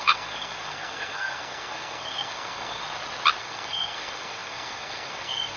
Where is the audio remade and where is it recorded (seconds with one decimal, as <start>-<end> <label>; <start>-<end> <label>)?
0.0-2.8 remade; 2.8-3.4 recorded; 3.4-5.6 remade